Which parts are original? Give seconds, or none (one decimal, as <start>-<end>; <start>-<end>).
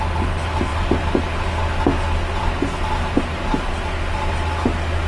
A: 0.0-5.1